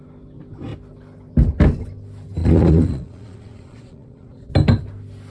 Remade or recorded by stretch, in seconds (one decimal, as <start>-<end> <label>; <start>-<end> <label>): 0.0-2.4 recorded; 2.4-4.5 remade; 4.5-5.3 recorded